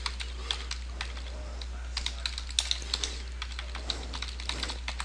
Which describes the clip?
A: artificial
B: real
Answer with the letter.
B